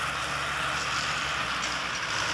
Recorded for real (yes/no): yes